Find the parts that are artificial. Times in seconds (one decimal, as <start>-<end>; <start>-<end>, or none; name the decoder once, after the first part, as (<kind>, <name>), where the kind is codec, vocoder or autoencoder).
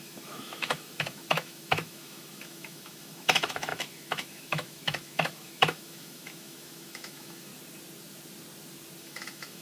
0.0-7.5 (autoencoder, DAC-VAE); 9.0-9.6